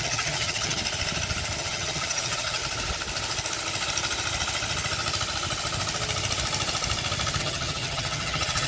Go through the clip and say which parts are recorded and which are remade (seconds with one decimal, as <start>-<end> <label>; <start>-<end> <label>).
0.0-0.8 remade; 0.8-1.6 recorded; 1.6-2.6 remade; 2.6-7.4 recorded; 7.4-8.7 remade